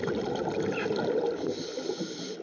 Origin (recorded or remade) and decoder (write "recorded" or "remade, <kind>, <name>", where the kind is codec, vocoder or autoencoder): recorded